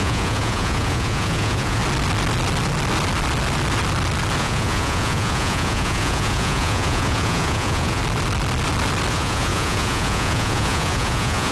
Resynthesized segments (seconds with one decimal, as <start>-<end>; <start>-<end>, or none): 0.0-1.8; 4.4-8.0; 9.1-11.5